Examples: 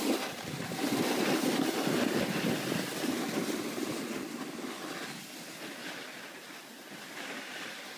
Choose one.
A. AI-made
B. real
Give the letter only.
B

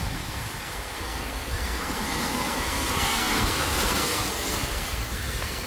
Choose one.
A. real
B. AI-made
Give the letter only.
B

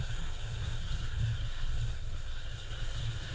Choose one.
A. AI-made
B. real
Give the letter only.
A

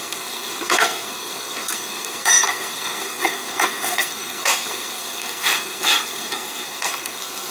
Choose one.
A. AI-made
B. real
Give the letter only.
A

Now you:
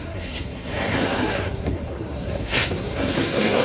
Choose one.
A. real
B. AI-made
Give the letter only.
B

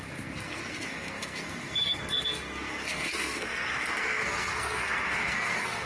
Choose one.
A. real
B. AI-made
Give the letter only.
B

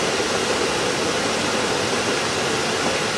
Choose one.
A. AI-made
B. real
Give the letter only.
B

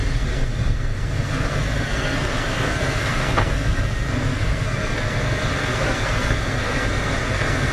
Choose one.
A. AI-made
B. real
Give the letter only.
A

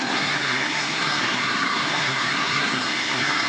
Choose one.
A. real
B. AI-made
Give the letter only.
B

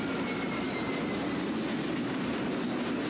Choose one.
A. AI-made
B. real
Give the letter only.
B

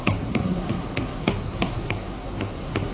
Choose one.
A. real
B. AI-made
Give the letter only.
B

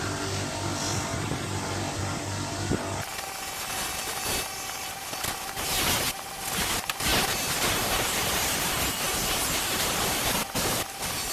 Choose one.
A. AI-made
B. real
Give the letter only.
B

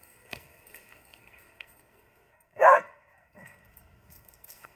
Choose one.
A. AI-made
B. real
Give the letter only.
A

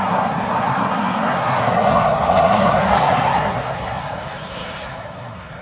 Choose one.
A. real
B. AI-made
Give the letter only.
B